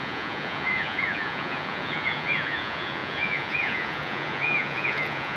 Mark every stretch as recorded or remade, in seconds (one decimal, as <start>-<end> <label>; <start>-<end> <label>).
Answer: 0.0-5.4 remade